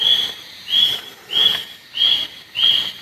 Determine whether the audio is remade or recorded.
recorded